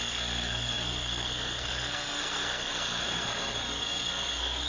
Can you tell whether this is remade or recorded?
remade